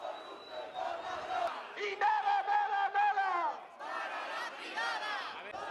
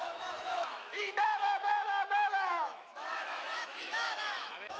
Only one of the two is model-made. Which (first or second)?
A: second